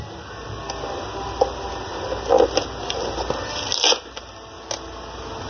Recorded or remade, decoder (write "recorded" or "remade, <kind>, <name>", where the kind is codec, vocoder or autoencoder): recorded